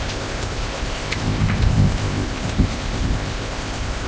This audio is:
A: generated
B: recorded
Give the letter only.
A